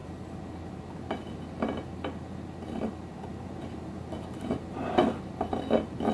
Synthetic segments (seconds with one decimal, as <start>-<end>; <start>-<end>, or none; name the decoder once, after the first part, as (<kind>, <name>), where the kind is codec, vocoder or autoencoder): 3.3-5.0 (vocoder, BigVGAN v2)